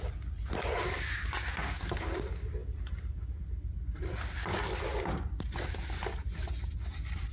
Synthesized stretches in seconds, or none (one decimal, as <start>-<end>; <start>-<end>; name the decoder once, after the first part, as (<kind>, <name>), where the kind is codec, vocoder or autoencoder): none